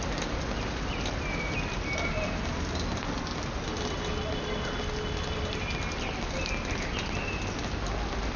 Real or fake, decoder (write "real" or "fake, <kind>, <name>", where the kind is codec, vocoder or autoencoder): real